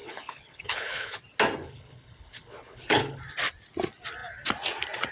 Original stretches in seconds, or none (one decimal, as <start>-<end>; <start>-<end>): 1.2-1.6; 3.2-5.1